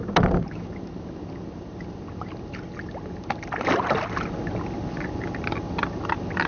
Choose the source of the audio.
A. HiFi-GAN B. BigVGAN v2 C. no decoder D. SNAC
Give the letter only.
C